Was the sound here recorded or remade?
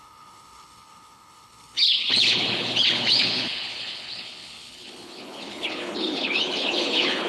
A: remade